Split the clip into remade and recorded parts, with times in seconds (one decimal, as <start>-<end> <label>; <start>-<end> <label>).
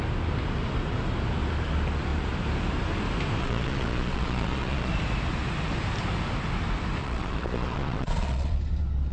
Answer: 0.0-3.4 recorded; 3.4-4.9 remade; 4.9-7.0 recorded; 7.0-8.6 remade; 8.6-9.1 recorded